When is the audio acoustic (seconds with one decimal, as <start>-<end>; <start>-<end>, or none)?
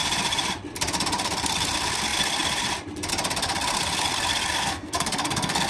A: 0.0-4.6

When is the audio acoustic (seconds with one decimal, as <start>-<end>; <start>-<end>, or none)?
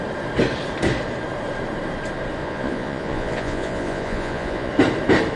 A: 0.0-2.4; 4.7-5.4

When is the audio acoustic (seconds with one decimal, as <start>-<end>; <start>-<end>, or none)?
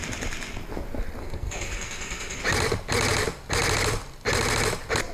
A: 0.0-1.2; 2.4-5.1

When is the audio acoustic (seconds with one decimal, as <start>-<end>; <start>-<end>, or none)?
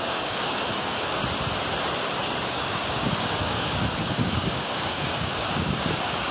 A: 1.2-2.5